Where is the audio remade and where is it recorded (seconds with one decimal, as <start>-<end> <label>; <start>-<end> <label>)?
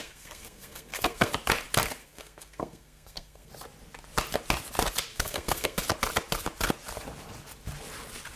0.0-1.3 remade; 1.3-2.0 recorded; 2.0-3.5 remade; 3.5-5.1 recorded; 5.1-5.8 remade; 5.8-8.4 recorded